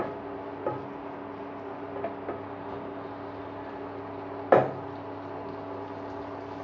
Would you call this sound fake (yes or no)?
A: no